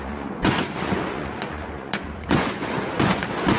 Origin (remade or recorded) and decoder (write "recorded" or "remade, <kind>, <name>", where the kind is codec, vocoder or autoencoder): remade, vocoder, Vocos